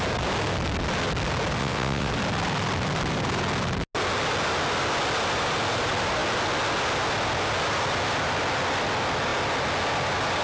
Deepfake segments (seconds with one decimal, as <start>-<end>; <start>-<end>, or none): 1.6-2.1